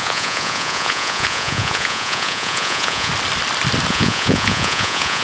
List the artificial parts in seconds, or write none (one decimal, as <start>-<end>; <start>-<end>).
0.0-3.1; 3.9-5.2